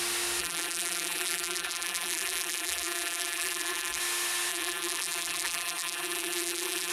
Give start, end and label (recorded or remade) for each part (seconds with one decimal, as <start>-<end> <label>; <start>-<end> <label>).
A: 0.0-0.4 recorded; 0.4-4.0 remade; 4.0-4.5 recorded; 4.5-6.9 remade